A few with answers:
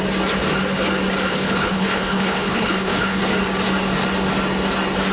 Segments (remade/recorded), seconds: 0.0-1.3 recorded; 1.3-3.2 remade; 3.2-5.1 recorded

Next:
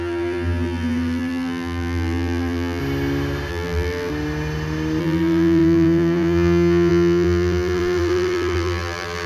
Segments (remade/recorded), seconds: 0.0-2.8 remade; 2.8-3.5 recorded; 3.5-4.1 remade; 4.1-5.0 recorded; 5.0-9.3 remade

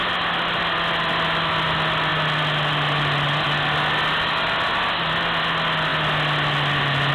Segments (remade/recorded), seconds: 0.0-7.1 recorded

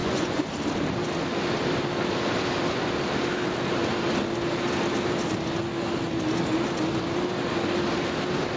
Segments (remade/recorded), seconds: 0.0-0.5 remade; 0.5-8.6 recorded

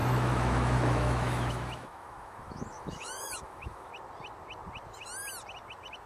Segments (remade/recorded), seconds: 0.0-3.9 remade; 3.9-6.1 recorded

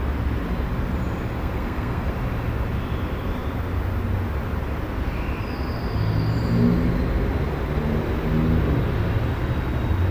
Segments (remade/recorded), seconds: 0.0-1.4 recorded; 1.4-2.1 remade; 2.1-10.1 recorded